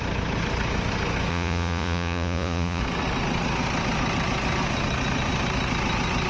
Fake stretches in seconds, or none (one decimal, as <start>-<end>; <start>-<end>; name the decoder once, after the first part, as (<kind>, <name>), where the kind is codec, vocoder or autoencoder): 1.3-2.8 (vocoder, Vocos)